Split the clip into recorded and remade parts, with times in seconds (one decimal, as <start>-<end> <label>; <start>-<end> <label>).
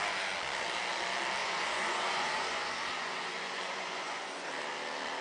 0.0-1.4 recorded; 1.4-4.5 remade; 4.5-5.2 recorded